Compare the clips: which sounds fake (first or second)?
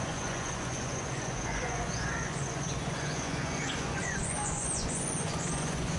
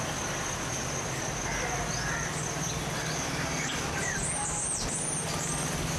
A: first